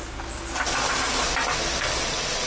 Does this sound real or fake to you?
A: real